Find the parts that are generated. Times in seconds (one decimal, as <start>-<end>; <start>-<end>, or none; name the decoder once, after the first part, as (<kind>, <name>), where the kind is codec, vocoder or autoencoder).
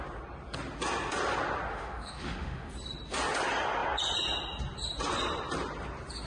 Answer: 1.7-2.7 (autoencoder, DAC-VAE)